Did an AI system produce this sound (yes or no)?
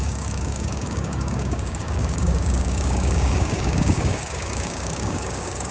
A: yes